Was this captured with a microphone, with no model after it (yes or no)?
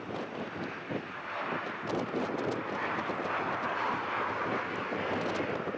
yes